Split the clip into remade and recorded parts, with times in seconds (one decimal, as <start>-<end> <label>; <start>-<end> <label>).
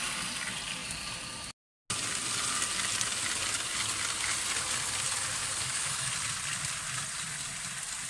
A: 0.0-5.4 recorded; 5.4-6.1 remade; 6.1-8.1 recorded